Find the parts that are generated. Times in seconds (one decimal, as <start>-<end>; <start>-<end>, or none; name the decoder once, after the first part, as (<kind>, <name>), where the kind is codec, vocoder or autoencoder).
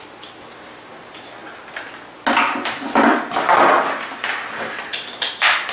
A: none